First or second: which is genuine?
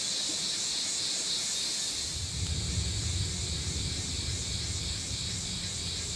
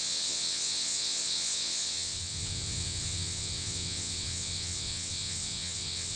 first